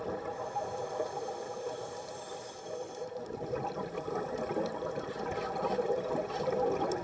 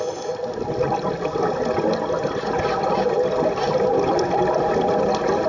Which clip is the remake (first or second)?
first